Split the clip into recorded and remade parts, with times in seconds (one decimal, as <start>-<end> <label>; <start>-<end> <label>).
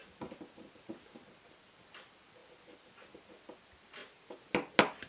0.0-1.3 recorded; 1.3-2.4 remade; 2.4-3.6 recorded; 3.6-4.0 remade; 4.0-5.1 recorded